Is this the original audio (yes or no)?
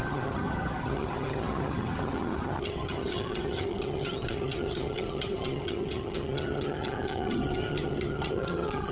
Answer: no